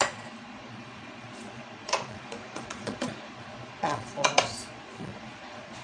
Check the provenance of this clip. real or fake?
fake